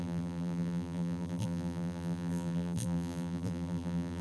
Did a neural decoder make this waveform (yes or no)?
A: yes